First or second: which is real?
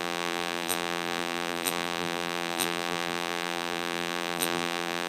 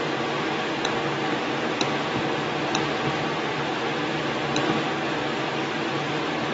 second